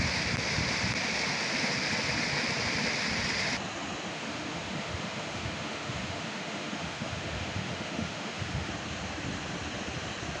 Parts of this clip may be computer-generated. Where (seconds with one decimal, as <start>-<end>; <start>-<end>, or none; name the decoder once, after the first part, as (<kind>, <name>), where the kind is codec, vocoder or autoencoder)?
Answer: 4.1-8.7 (autoencoder, DAC-VAE)